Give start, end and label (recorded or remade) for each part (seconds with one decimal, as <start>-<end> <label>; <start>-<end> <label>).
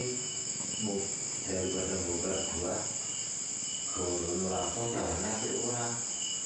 0.0-0.9 remade; 0.9-3.9 recorded; 3.9-4.5 remade; 4.5-6.5 recorded